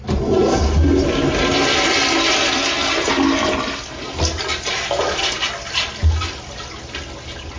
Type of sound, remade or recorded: recorded